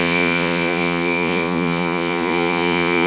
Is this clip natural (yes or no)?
no